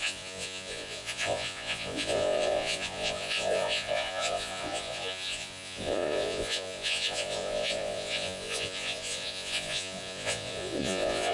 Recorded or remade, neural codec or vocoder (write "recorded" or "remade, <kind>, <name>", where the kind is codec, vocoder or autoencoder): remade, vocoder, Vocos